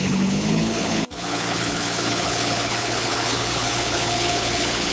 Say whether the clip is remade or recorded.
remade